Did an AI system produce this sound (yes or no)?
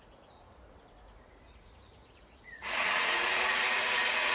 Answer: yes